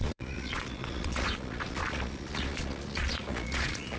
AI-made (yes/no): yes